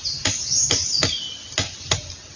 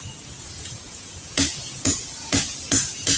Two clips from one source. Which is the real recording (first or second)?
first